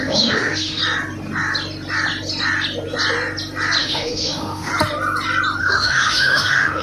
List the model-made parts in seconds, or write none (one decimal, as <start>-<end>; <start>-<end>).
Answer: 0.0-0.8; 3.8-4.7; 5.6-6.8